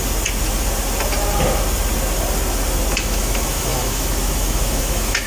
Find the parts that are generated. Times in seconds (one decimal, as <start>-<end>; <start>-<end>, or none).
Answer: 2.9-5.3